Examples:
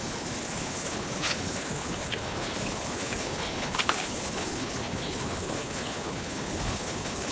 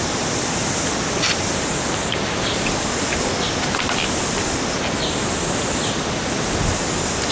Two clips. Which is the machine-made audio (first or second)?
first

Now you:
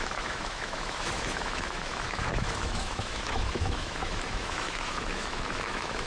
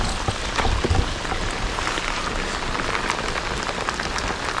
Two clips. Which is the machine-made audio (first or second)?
first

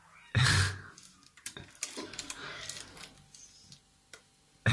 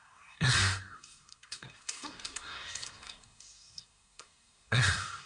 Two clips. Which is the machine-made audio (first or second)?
second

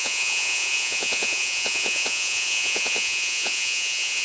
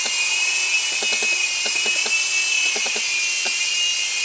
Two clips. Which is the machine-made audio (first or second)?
first